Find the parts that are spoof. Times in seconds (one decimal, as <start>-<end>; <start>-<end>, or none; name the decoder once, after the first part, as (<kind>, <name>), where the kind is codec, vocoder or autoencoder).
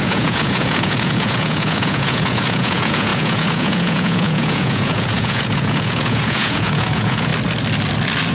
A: 0.0-7.3 (vocoder, Vocos)